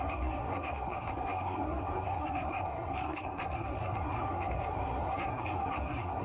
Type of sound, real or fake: fake